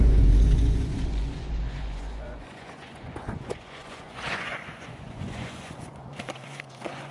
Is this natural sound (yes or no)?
no